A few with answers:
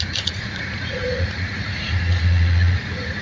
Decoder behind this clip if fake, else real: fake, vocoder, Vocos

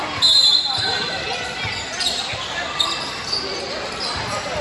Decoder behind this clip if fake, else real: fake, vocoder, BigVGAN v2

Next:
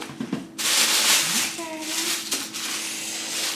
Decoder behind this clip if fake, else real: real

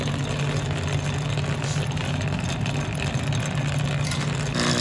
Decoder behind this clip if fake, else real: real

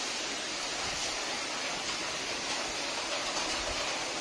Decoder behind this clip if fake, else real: fake, vocoder, BigVGAN v2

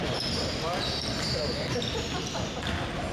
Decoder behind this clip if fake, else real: real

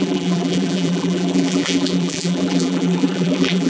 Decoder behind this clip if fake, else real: fake, vocoder, BigVGAN v2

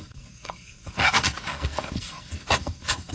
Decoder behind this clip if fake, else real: fake, codec, SNAC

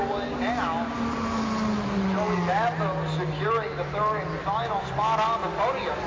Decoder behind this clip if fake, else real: real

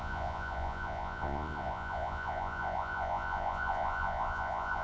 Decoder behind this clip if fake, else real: fake, vocoder, Vocos